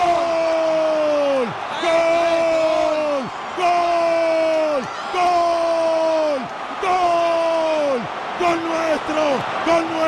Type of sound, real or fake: real